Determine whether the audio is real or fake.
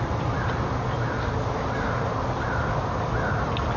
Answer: real